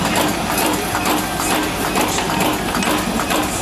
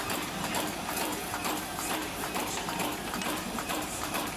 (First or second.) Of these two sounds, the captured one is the first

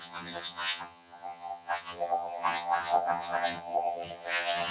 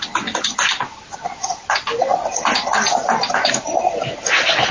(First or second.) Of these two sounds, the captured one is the second